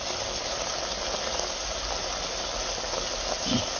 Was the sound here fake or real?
real